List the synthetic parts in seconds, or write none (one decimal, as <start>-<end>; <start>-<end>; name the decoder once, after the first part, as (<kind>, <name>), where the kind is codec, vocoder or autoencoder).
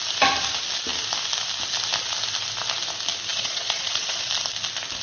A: 3.3-4.3 (vocoder, Vocos)